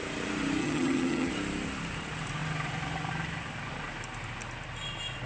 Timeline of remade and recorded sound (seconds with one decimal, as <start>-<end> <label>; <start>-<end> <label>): 0.0-0.6 recorded; 0.6-1.3 remade; 1.3-5.3 recorded